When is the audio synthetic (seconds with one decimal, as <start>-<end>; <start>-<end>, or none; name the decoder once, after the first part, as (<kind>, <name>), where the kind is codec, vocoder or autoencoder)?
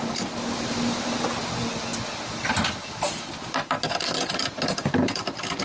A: none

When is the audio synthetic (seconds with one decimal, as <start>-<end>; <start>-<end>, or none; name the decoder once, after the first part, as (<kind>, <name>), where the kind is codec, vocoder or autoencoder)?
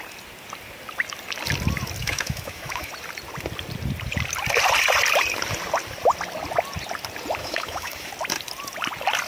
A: 2.0-2.9 (autoencoder, DAC-VAE); 7.4-8.1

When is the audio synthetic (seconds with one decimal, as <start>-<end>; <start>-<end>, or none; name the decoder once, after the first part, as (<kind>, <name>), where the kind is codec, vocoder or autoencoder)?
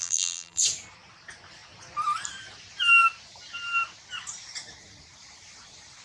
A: 0.0-0.6 (vocoder, BigVGAN v2)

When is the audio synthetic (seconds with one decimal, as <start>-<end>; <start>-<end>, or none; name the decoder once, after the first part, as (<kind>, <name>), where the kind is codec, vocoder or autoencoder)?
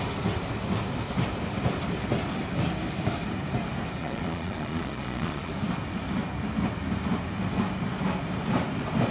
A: 4.0-5.5 (vocoder, Vocos)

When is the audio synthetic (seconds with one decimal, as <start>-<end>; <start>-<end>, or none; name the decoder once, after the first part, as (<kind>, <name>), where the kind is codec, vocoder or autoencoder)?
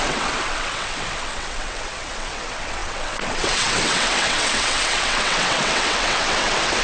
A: 0.0-6.8 (vocoder, WaveNeXt)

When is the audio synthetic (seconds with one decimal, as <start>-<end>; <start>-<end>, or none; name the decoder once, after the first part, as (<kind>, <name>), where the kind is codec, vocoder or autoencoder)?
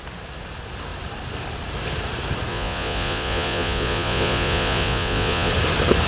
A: 2.5-5.5 (vocoder, Vocos)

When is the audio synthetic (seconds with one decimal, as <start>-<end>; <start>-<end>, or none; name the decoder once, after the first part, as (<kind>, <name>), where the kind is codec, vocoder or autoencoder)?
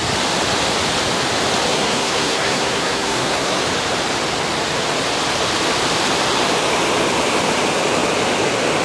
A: 1.7-3.6 (codec, SNAC)